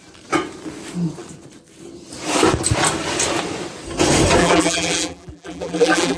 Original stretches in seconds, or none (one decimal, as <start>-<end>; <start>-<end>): 0.0-4.4